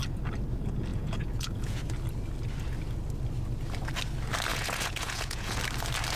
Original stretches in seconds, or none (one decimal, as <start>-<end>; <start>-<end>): 0.0-0.9; 1.8-4.5; 5.6-6.2